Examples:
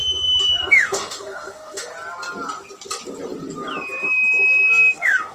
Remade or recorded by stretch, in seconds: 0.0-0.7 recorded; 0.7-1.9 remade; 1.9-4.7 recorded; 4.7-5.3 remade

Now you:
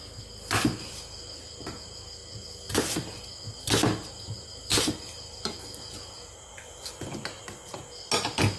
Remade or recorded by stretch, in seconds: 0.0-8.6 recorded